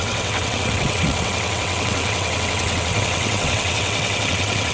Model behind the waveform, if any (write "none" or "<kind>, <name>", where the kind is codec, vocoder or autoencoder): vocoder, WaveNeXt